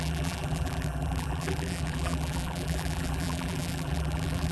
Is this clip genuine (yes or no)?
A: no